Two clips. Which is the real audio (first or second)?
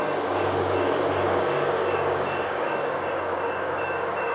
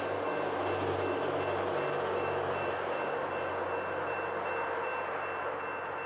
second